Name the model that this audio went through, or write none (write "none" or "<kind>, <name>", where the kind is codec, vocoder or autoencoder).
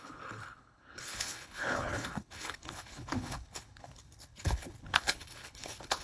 codec, HILCodec